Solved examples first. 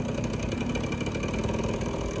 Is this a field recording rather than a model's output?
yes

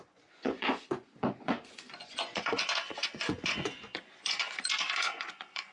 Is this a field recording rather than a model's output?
no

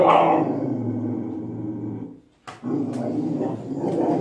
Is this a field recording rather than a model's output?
yes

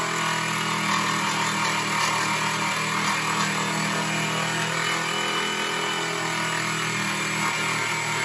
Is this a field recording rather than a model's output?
yes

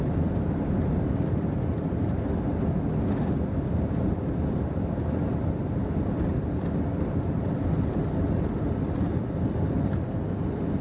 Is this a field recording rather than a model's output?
yes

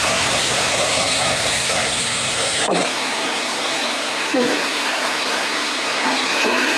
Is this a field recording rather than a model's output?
no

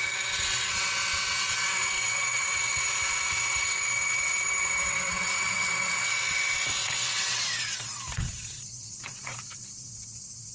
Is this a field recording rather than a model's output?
no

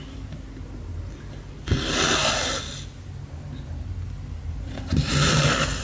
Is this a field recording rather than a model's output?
yes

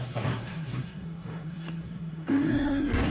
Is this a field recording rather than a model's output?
no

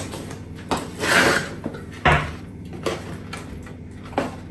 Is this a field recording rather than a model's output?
yes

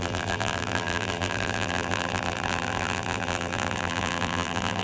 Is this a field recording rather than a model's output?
no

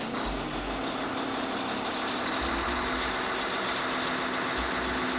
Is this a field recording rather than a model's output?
yes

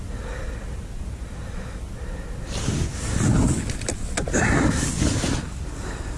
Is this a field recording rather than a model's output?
yes